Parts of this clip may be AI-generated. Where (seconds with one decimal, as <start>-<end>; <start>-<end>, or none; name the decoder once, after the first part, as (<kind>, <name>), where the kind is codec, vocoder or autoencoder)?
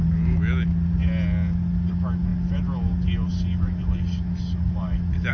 none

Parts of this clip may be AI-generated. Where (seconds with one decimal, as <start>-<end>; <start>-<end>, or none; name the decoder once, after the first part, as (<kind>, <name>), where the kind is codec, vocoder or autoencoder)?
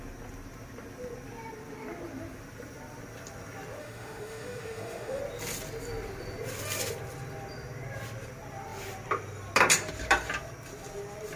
3.8-5.2 (autoencoder, DAC-VAE)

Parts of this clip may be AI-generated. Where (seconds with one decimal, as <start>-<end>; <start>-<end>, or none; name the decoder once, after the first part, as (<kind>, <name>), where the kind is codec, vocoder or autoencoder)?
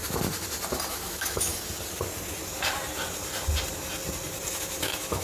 0.9-1.5 (autoencoder, DAC-VAE); 4.6-5.2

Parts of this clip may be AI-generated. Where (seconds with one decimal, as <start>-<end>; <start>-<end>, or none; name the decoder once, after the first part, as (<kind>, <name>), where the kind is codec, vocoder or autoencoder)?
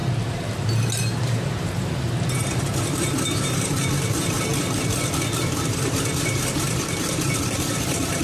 1.2-4.5 (vocoder, BigVGAN v2); 5.4-8.2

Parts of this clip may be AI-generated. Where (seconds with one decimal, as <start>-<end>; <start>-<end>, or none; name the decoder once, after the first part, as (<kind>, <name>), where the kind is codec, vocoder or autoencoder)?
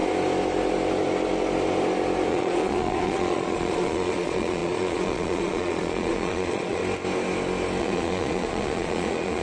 2.3-6.8 (vocoder, Vocos); 7.8-9.4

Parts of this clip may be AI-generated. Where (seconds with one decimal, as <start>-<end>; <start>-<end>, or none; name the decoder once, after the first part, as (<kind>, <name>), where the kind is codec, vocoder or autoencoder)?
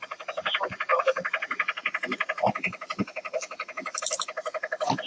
none